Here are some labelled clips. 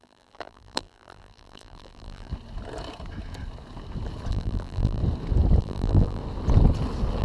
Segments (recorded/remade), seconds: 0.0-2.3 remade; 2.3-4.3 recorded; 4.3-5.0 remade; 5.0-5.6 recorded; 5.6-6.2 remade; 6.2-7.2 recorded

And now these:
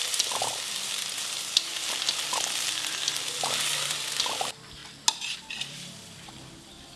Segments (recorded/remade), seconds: 0.0-1.7 remade; 1.7-2.7 recorded; 2.7-4.8 remade; 4.8-5.5 recorded; 5.5-7.0 remade

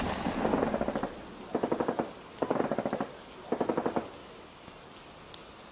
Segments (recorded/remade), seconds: 0.0-4.2 recorded; 4.2-4.7 remade; 4.7-5.7 recorded

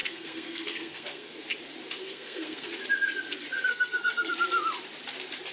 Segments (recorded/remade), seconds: 0.0-1.4 remade; 1.4-2.0 recorded; 2.0-2.7 remade; 2.7-3.7 recorded; 3.7-4.3 remade; 4.3-5.5 recorded

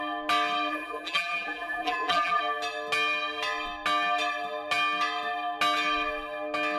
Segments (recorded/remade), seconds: 0.0-0.7 recorded; 0.7-2.4 remade; 2.4-6.8 recorded

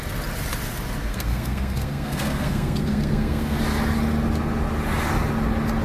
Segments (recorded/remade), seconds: 0.0-1.0 recorded; 1.0-3.6 remade; 3.6-5.8 recorded